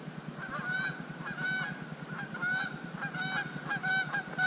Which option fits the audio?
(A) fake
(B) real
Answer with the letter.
B